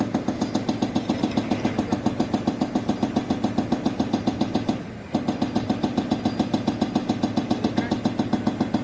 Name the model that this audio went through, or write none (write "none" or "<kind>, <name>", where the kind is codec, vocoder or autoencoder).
none